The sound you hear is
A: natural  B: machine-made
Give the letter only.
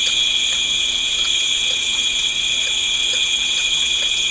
B